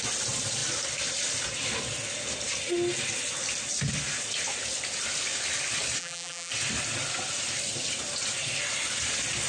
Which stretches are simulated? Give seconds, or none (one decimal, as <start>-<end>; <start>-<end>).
6.0-6.5

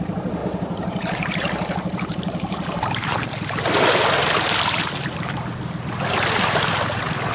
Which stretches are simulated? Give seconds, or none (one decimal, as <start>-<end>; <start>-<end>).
0.4-3.3

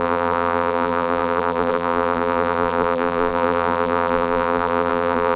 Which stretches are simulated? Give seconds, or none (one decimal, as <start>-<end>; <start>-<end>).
0.0-5.4